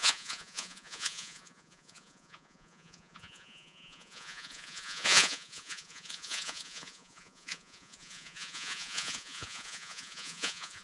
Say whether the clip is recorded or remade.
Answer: remade